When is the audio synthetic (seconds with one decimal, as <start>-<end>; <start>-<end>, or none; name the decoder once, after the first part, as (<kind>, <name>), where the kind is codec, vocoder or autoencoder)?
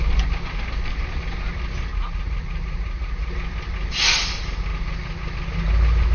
1.9-3.3 (vocoder, Vocos)